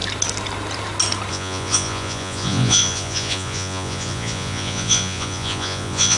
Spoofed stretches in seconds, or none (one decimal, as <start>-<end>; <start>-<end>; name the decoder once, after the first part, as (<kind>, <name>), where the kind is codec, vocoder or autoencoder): 1.3-6.2 (vocoder, Vocos)